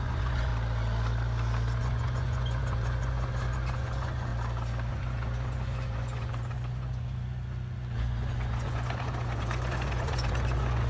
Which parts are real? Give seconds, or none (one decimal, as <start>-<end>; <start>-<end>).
0.5-1.8; 4.3-4.9